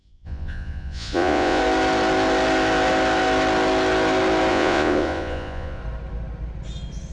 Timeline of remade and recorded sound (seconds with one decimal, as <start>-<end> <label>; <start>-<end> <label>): 0.0-1.6 remade; 1.6-4.5 recorded; 4.5-5.8 remade; 5.8-7.1 recorded